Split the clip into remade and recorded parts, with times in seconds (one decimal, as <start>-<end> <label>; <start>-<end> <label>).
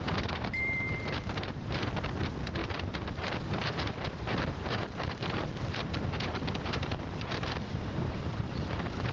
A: 0.0-9.1 remade